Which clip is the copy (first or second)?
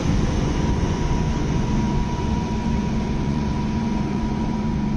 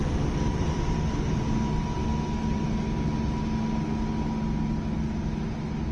first